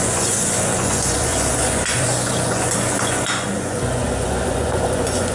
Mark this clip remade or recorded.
remade